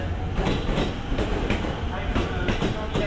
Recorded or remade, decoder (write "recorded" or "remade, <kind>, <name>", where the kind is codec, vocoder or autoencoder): recorded